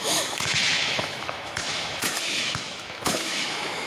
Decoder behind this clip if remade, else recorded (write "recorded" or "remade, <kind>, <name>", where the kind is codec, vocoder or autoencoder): remade, autoencoder, DAC-VAE